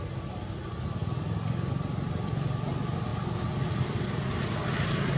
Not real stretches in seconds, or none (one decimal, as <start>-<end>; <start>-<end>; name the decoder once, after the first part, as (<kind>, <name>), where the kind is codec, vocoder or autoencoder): none